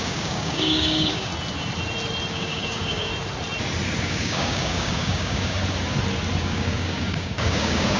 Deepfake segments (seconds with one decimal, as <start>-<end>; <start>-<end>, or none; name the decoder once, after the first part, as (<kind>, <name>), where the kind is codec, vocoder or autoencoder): 0.0-1.3 (codec, DAC); 2.3-3.1; 4.0-5.6; 6.4-8.0